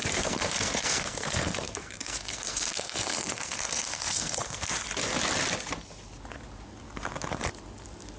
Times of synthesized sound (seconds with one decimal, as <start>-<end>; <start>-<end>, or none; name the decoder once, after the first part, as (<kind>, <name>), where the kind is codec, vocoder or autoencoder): 0.0-4.7 (codec, SNAC)

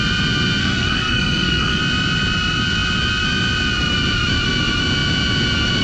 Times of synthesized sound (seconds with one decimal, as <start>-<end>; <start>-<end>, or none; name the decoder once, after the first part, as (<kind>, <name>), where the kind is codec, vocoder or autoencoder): 0.6-1.8 (codec, SNAC)

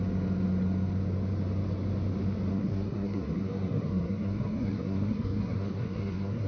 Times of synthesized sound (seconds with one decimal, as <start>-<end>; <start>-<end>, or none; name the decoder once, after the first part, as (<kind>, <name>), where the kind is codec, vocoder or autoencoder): 2.5-6.5 (codec, SNAC)

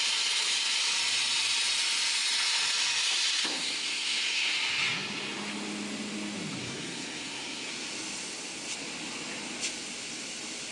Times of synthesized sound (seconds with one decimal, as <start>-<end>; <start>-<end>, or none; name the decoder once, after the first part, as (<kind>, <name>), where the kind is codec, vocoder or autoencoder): 3.4-4.5 (codec, SNAC); 6.6-7.7

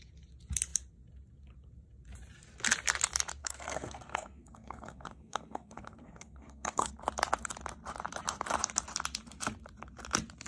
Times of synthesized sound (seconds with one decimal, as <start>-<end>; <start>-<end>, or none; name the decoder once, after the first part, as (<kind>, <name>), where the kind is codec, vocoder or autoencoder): 3.4-6.9 (codec, SNAC)

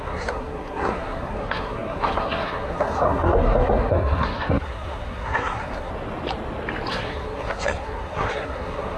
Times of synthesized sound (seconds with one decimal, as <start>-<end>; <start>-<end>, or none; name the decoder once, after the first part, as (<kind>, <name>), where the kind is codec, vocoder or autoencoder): 0.0-5.9 (codec, SNAC); 6.9-9.0

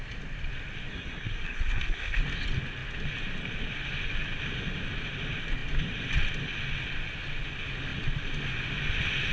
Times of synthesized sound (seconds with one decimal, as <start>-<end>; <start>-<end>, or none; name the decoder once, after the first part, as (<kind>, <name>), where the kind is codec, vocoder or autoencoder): 0.9-2.2 (codec, SNAC)